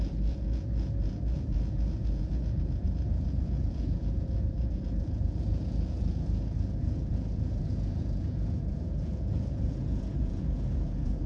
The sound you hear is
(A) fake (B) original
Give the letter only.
A